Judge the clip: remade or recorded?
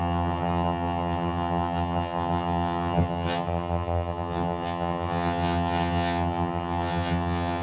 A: remade